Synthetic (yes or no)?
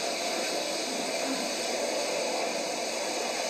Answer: no